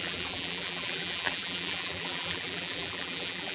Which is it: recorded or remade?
remade